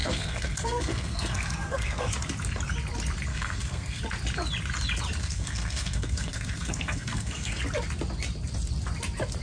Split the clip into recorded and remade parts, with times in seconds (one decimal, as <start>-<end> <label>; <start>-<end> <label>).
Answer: 0.0-2.1 remade; 2.1-3.3 recorded; 3.3-4.0 remade; 4.0-5.2 recorded; 5.2-7.6 remade; 7.6-9.4 recorded